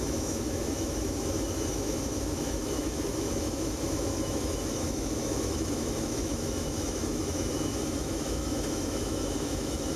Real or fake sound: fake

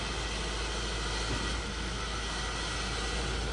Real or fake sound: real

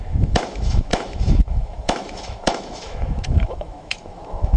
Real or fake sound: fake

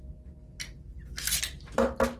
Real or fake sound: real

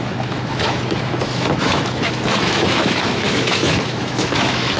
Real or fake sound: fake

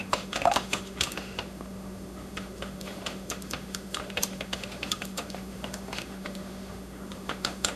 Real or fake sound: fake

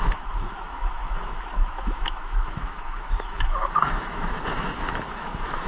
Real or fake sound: fake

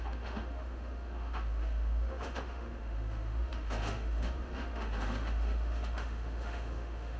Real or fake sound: fake